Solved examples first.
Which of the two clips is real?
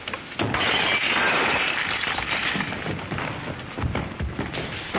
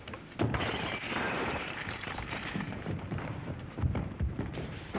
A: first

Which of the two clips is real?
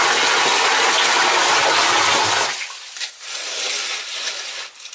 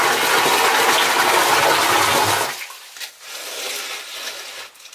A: second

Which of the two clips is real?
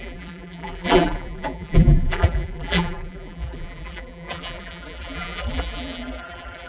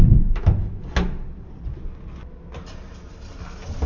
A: second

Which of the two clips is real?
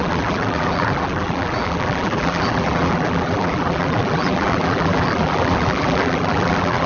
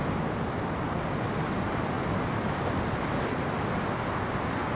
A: second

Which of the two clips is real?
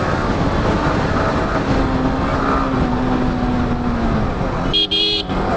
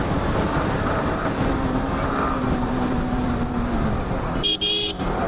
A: first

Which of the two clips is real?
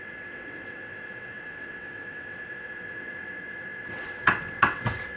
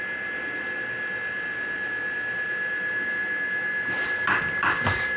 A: second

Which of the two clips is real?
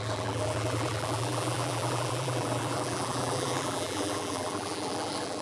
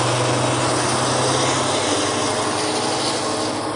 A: second